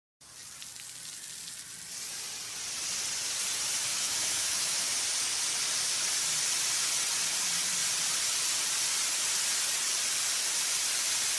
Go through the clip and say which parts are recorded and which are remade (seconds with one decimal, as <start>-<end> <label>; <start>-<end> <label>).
0.0-3.9 recorded; 3.9-4.9 remade; 4.9-11.4 recorded